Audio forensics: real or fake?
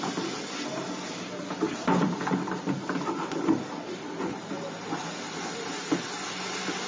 real